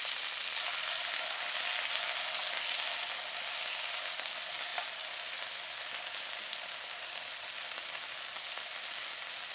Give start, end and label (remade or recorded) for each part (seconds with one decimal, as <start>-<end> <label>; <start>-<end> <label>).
0.0-9.5 recorded